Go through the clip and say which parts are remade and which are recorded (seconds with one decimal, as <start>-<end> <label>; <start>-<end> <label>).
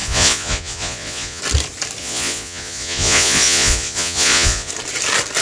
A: 0.0-1.4 remade; 1.4-2.0 recorded; 2.0-4.7 remade; 4.7-5.4 recorded